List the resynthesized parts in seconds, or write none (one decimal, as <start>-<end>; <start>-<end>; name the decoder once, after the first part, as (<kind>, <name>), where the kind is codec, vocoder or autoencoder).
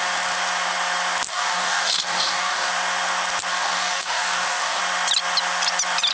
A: 1.3-2.7 (codec, DAC); 3.5-4.8